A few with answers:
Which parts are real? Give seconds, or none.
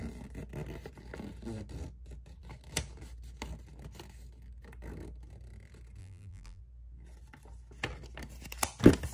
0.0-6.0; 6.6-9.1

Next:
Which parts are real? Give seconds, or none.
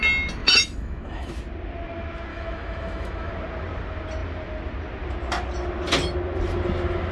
0.0-0.4; 1.3-2.3; 3.3-7.1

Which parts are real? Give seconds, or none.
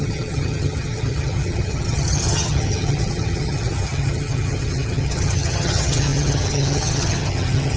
none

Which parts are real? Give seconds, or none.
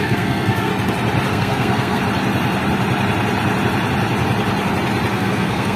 0.7-1.3; 2.0-5.1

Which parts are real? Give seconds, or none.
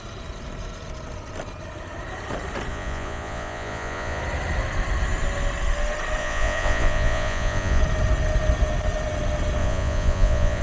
0.0-2.7; 4.2-6.2; 7.8-9.6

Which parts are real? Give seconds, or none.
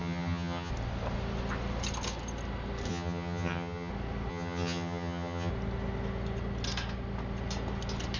0.7-2.9; 3.9-4.3; 5.5-8.2